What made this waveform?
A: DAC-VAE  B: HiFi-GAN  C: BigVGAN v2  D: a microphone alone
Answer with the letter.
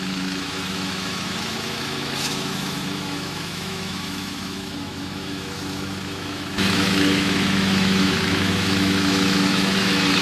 A